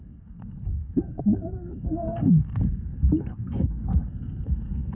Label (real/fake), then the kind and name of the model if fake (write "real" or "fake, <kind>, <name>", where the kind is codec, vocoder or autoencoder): fake, codec, SNAC